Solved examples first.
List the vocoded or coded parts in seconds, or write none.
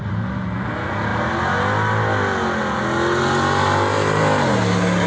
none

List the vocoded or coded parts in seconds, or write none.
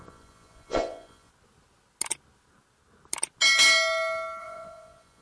0.0-1.3 (vocoder, Vocos); 4.4-5.2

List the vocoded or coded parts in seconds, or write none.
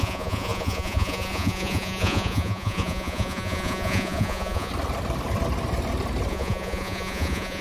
0.0-4.7 (vocoder, Vocos); 6.3-7.6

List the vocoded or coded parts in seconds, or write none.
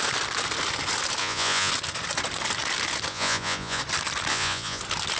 1.2-1.7 (vocoder, Vocos); 3.1-3.8; 4.3-4.8